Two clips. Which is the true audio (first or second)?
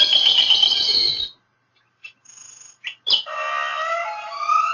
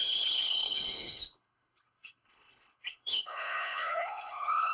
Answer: first